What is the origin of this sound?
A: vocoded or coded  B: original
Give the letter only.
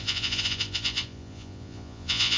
A